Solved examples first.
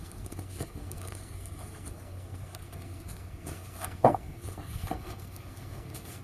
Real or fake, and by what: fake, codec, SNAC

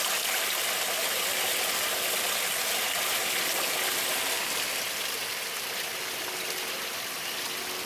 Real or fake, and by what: real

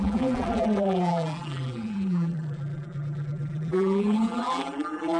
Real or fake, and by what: fake, vocoder, BigVGAN v2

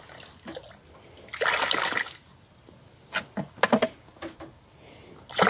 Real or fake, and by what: real